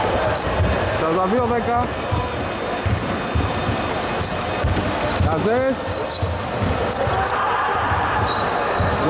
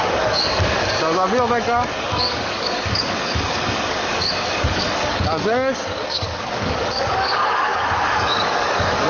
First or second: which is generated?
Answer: second